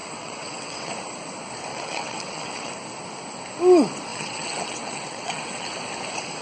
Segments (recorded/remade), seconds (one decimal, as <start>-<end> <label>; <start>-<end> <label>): 0.0-0.9 remade; 0.9-1.7 recorded; 1.7-2.7 remade; 2.7-4.1 recorded; 4.1-5.7 remade; 5.7-6.4 recorded